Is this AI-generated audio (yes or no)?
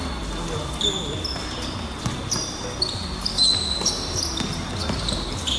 no